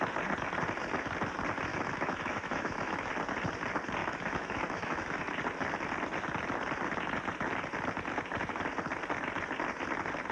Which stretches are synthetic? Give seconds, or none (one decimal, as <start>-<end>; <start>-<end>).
1.7-3.1; 4.0-5.2